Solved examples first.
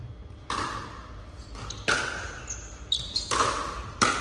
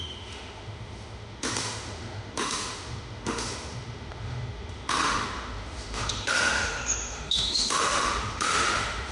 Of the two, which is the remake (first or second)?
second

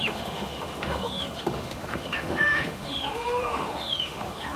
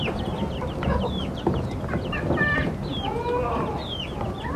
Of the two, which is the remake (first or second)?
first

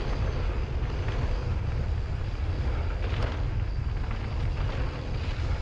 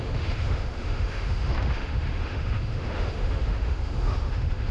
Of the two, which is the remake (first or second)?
second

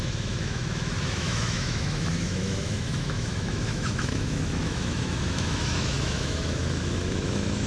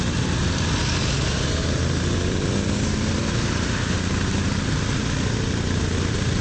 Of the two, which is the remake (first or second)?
first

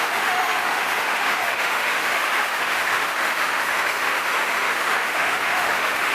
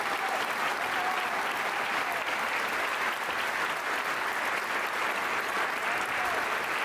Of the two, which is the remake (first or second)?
first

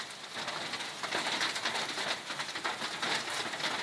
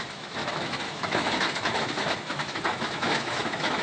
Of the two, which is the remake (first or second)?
second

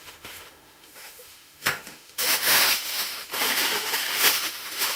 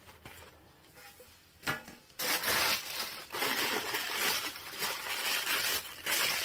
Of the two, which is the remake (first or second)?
first